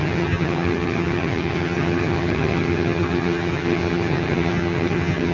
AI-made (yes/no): yes